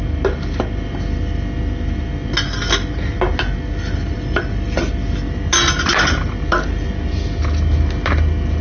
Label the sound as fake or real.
real